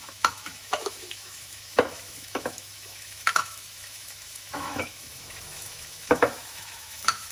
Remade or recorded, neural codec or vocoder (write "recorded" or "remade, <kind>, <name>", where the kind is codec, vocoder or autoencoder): remade, autoencoder, DAC-VAE